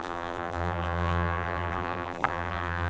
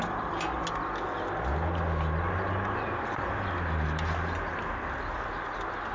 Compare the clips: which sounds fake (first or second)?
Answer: first